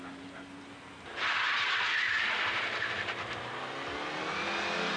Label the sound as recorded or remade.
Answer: recorded